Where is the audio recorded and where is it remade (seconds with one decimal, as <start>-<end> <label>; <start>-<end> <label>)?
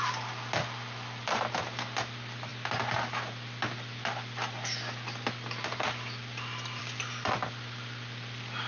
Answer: 0.0-8.7 recorded